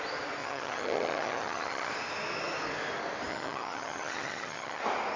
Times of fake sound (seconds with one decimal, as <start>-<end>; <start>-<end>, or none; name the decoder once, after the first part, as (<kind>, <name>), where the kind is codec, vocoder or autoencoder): 0.4-1.9 (vocoder, HiFi-GAN); 3.3-4.8

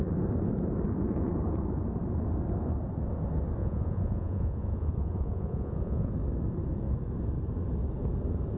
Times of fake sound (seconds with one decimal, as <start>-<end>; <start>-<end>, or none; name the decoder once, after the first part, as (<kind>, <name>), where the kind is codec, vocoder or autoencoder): 3.6-6.1 (vocoder, Vocos)

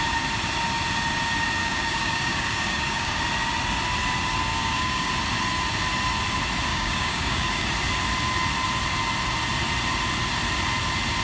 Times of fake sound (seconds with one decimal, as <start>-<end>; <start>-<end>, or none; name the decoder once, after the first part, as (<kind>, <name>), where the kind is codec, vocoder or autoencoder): 1.6-3.2 (codec, DAC); 4.5-5.1; 6.7-7.7

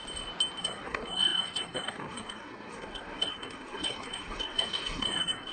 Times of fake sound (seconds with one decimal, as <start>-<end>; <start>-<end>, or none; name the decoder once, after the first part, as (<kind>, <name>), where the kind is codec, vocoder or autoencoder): 0.6-5.5 (codec, SNAC)

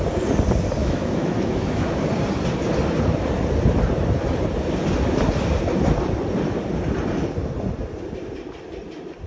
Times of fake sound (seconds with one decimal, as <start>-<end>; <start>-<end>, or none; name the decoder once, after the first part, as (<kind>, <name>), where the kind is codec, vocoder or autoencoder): 0.8-2.1 (autoencoder, DAC-VAE)

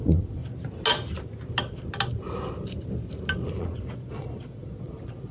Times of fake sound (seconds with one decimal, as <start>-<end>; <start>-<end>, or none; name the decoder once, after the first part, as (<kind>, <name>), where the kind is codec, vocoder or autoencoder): 0.0-0.4 (vocoder, Vocos); 3.6-5.3